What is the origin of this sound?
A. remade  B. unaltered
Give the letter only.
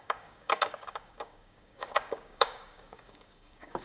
A